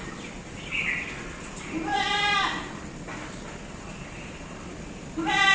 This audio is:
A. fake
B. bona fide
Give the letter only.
B